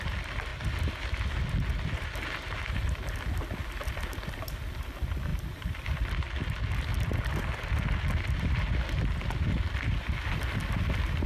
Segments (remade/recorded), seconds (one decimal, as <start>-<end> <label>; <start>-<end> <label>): 0.0-5.3 recorded; 5.3-6.1 remade; 6.1-6.9 recorded; 6.9-7.4 remade; 7.4-11.3 recorded